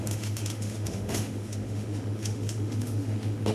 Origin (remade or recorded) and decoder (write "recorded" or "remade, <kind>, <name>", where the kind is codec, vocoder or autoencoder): remade, autoencoder, DAC-VAE